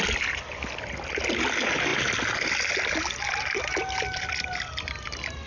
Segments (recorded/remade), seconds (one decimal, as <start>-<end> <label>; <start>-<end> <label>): 0.0-5.5 recorded